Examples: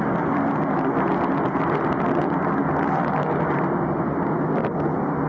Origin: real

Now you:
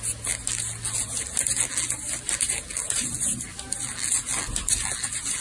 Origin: real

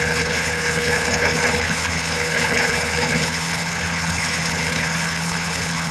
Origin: fake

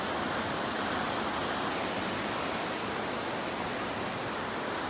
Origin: real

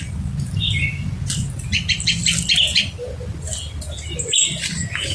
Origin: real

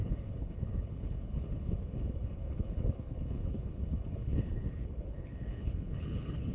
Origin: fake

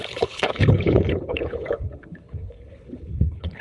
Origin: fake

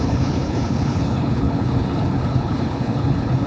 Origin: fake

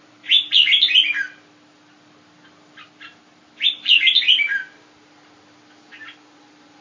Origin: real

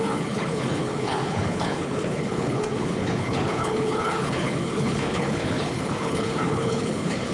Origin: fake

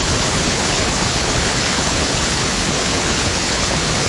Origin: fake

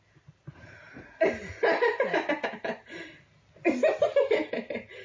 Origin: real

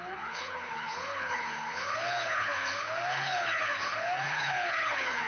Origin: fake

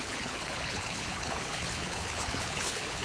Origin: fake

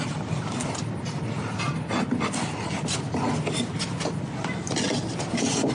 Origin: real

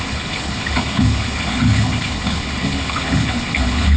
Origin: fake